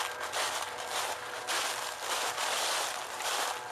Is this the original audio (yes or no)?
yes